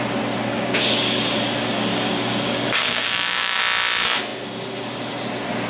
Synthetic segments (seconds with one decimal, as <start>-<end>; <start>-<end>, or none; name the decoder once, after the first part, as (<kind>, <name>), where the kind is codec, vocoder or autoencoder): 0.5-1.4 (codec, DAC); 1.9-3.6